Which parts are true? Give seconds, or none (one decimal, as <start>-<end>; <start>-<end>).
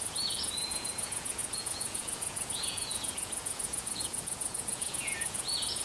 none